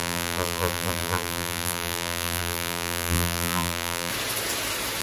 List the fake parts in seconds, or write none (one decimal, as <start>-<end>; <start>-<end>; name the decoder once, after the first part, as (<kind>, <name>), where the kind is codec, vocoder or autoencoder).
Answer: 0.0-4.1 (vocoder, BigVGAN v2)